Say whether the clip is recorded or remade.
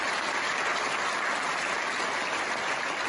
recorded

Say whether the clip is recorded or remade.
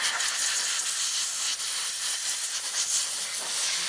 remade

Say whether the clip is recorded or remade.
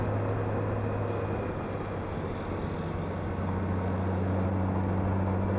recorded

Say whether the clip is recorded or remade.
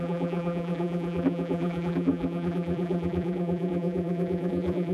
remade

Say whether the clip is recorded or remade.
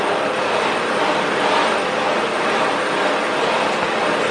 remade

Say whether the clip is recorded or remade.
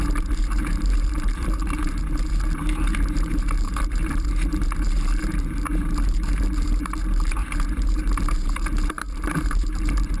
remade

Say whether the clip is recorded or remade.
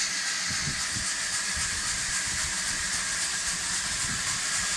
recorded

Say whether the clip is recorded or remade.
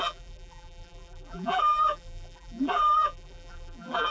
remade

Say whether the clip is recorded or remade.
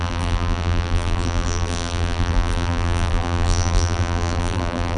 remade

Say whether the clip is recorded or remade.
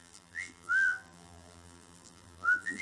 remade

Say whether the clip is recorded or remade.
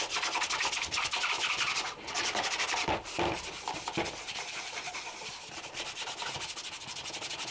remade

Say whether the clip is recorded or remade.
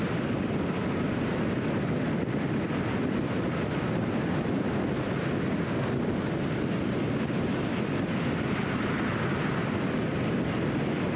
recorded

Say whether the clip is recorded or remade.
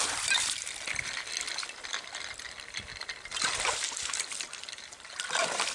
remade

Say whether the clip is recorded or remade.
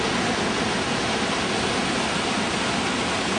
recorded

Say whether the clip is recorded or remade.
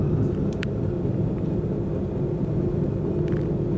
recorded